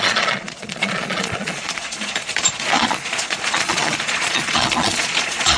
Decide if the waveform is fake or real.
fake